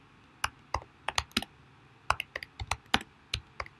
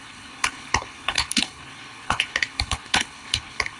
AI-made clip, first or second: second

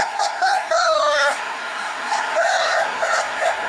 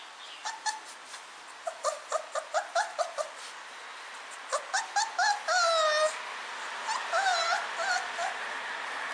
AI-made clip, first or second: first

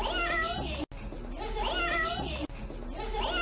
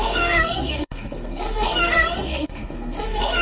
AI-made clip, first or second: second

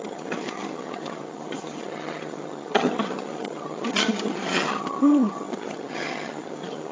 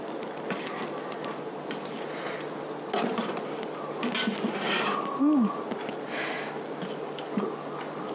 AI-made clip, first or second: first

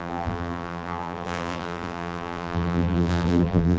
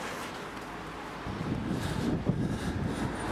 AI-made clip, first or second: first